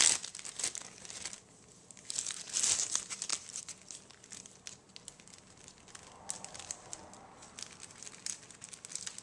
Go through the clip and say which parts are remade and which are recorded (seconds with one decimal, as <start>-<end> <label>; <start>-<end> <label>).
0.0-9.2 recorded